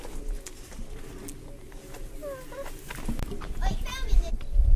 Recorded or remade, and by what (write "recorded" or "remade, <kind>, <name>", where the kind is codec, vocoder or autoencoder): recorded